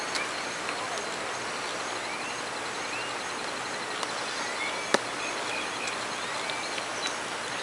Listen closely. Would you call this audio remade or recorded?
recorded